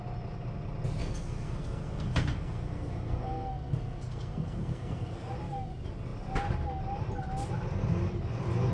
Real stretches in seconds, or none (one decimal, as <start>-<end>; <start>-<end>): 0.0-1.0; 5.3-8.7